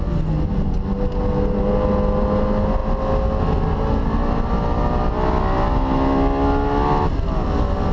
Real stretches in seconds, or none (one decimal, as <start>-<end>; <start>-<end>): 0.0-7.9